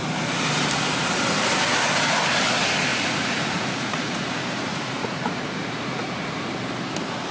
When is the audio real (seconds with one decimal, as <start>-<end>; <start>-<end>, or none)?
0.0-2.9; 6.5-7.3